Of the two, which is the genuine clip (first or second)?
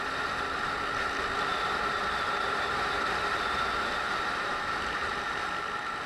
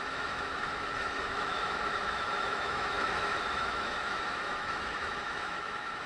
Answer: first